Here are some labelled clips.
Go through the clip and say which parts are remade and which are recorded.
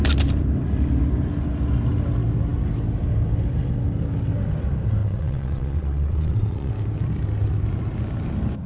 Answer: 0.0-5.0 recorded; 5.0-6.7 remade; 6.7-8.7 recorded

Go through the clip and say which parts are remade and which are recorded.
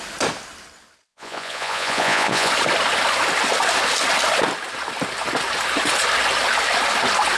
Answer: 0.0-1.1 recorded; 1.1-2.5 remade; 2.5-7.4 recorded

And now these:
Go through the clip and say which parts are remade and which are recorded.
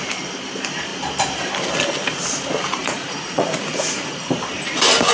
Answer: 0.0-2.8 recorded; 2.8-4.3 remade; 4.3-5.1 recorded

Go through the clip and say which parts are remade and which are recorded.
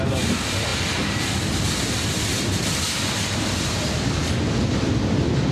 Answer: 0.0-5.5 recorded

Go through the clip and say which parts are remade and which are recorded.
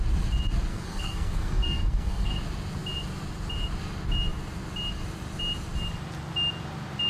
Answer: 0.0-0.7 recorded; 0.7-2.3 remade; 2.3-7.1 recorded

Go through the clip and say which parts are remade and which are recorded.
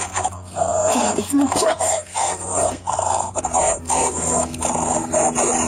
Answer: 0.0-5.1 remade; 5.1-5.7 recorded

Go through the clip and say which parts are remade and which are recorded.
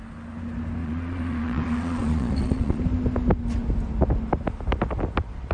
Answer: 0.0-0.8 recorded; 0.8-2.8 remade; 2.8-5.5 recorded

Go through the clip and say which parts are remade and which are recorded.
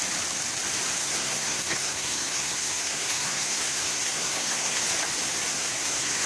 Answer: 0.0-1.0 recorded; 1.0-4.8 remade; 4.8-5.5 recorded; 5.5-6.3 remade